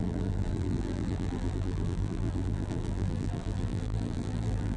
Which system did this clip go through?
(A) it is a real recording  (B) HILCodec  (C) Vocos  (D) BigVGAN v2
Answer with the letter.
D